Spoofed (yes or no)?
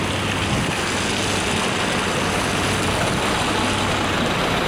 no